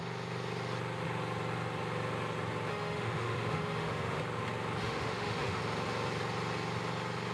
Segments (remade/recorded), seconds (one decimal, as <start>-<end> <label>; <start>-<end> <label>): 0.0-2.7 recorded; 2.7-4.2 remade; 4.2-4.8 recorded; 4.8-5.6 remade; 5.6-7.3 recorded